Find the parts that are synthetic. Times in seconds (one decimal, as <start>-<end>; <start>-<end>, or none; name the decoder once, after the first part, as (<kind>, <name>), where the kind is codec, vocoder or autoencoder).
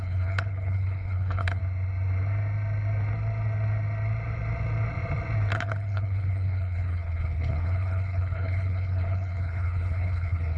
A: 0.0-1.6 (codec, HILCodec); 5.5-10.6